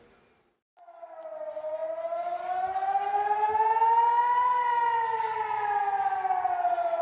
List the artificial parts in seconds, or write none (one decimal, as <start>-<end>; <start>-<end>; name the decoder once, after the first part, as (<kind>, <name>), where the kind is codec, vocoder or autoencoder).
none

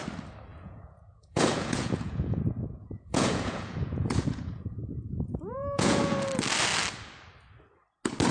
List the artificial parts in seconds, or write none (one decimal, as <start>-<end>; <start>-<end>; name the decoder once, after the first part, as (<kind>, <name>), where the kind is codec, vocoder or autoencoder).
0.5-2.4 (vocoder, Vocos); 2.8-6.1

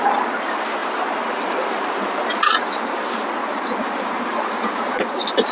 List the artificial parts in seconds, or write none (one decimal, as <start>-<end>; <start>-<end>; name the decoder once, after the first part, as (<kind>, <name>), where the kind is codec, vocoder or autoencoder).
0.8-2.6 (vocoder, BigVGAN v2)

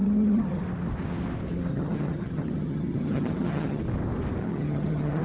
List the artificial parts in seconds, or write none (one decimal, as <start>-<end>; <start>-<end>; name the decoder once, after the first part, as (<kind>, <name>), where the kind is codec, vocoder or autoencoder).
0.0-0.6 (vocoder, HiFi-GAN); 1.7-3.8; 4.4-5.2